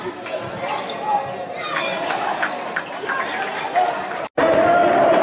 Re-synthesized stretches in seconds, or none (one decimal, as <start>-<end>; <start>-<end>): none

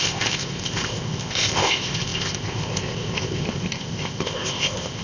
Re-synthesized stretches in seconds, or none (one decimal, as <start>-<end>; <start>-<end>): 0.0-5.0